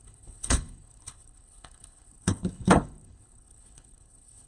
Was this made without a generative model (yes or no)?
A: no